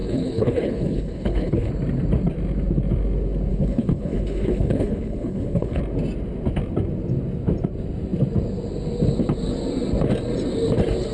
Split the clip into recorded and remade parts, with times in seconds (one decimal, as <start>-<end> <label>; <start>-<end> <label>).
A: 0.0-1.7 remade; 1.7-3.5 recorded; 3.5-5.8 remade; 5.8-11.1 recorded